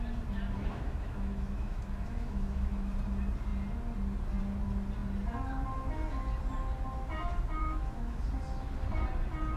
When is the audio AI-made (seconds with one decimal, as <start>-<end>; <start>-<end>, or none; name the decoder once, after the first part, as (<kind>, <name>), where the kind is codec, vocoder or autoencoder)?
0.7-2.9 (autoencoder, DAC-VAE); 7.6-8.2